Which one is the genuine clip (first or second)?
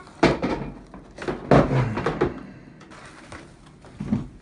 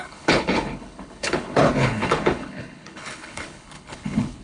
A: first